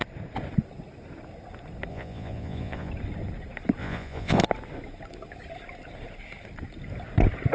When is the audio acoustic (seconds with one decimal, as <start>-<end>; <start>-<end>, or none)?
0.0-1.9; 2.9-3.8; 4.4-7.5